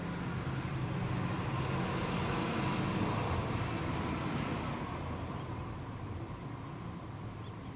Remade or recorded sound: recorded